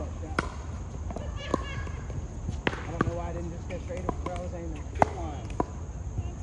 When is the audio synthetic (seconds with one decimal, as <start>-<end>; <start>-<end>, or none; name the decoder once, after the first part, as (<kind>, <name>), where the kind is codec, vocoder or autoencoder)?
none